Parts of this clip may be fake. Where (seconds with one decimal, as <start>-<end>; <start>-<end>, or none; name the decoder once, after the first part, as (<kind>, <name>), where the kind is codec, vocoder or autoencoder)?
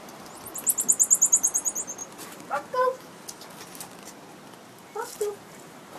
2.0-3.0 (vocoder, BigVGAN v2); 4.8-6.0